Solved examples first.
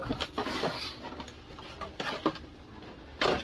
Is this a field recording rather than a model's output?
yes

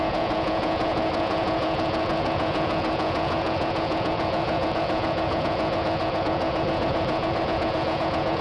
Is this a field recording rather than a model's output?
no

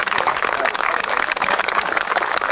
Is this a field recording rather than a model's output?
no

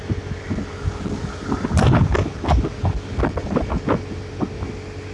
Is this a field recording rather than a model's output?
yes